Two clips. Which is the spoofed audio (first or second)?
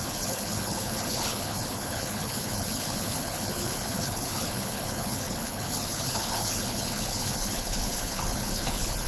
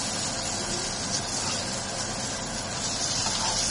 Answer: first